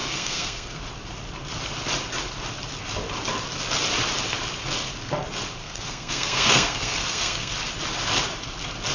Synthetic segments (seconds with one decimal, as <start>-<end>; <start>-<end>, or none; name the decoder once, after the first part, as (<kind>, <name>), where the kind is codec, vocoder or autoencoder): 0.0-0.8 (codec, SNAC); 5.6-7.5

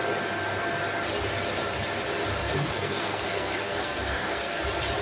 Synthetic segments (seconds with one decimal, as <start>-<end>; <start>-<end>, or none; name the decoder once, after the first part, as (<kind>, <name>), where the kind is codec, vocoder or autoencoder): 2.4-4.6 (codec, SNAC)

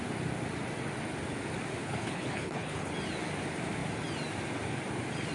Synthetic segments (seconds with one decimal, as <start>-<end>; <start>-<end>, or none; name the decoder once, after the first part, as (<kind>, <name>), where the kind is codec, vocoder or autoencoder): 1.8-2.9 (codec, HILCodec)

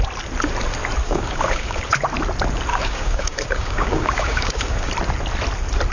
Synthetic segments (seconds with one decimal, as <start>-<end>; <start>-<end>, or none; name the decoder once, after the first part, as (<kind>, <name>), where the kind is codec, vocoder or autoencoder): 1.0-1.8 (codec, DAC); 2.7-4.9